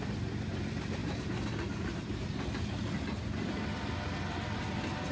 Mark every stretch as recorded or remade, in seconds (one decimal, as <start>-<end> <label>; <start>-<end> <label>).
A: 0.0-1.0 recorded; 1.0-2.6 remade; 2.6-5.1 recorded